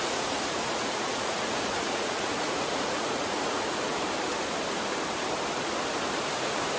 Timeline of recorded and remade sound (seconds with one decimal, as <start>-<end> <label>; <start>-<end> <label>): 0.0-3.8 remade; 3.8-6.8 recorded